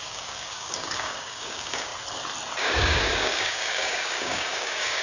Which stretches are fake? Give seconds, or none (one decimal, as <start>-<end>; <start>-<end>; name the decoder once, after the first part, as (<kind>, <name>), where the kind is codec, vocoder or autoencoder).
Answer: 0.0-1.9 (codec, DAC); 2.6-5.0